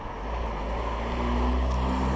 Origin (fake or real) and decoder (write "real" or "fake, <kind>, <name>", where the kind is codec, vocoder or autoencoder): real